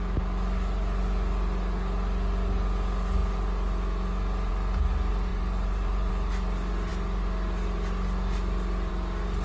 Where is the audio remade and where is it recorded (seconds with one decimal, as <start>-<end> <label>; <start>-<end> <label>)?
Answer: 0.0-5.3 recorded; 5.3-6.1 remade; 6.1-9.4 recorded